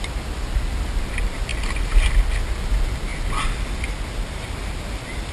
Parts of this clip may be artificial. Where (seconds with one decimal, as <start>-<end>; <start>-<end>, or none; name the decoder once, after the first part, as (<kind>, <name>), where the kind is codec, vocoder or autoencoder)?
none